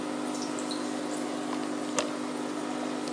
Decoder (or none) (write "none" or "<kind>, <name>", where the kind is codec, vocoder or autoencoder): none